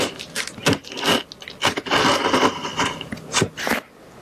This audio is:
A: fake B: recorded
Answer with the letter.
B